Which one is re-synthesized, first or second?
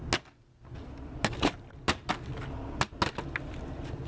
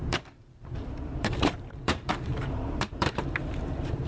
second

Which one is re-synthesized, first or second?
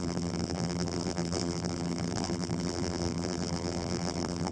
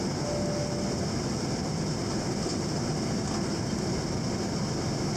first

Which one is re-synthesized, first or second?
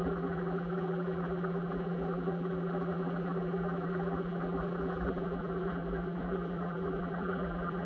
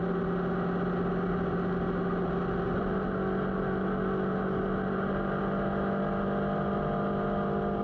first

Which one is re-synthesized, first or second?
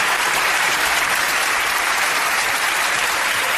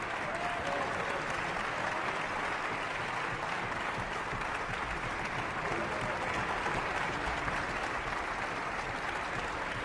first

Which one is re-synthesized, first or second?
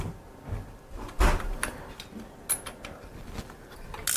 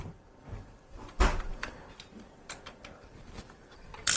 second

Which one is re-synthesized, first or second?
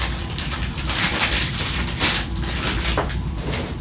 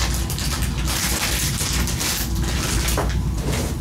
first